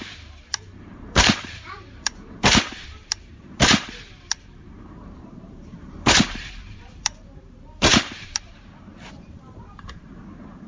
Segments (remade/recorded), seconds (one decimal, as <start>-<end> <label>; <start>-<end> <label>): 0.0-10.7 remade